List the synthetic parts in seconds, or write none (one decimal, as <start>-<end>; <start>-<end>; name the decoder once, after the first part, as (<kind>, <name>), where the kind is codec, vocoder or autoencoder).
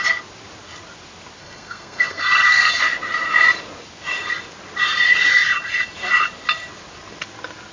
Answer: 1.4-2.7 (codec, SNAC)